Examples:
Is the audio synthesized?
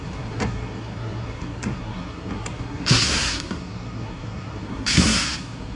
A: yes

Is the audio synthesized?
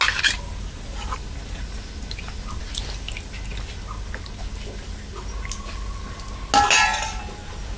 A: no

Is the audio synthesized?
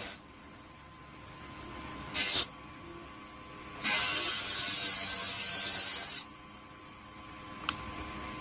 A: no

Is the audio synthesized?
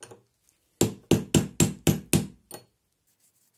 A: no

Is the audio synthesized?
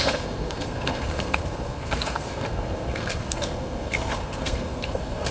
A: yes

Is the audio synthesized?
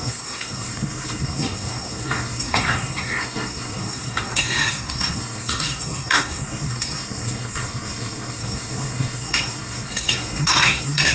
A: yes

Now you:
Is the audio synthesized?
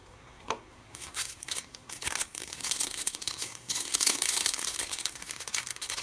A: yes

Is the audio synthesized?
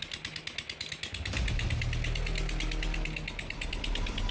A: no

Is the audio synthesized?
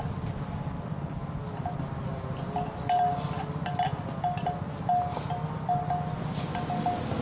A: no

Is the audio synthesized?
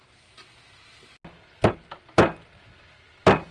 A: no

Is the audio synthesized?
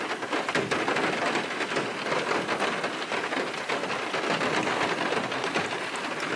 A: no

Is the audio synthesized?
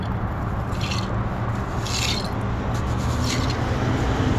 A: no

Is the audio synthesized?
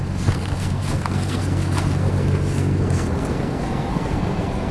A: yes